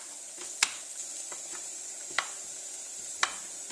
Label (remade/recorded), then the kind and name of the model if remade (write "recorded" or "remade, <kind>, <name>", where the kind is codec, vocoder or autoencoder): recorded